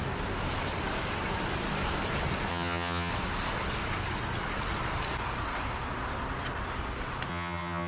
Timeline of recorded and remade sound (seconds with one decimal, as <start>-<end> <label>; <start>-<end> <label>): 0.0-2.5 recorded; 2.5-3.1 remade; 3.1-7.3 recorded; 7.3-7.9 remade